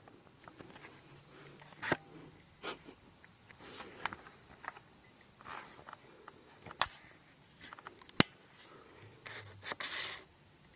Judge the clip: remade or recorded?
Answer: recorded